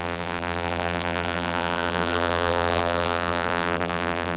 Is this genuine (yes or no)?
no